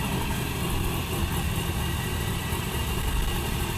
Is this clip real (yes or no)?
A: yes